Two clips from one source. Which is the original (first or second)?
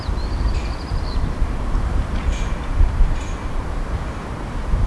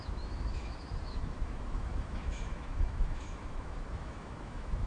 first